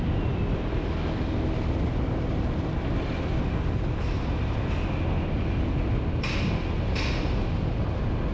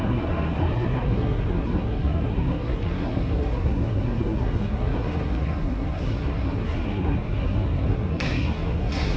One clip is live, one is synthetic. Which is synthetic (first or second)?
second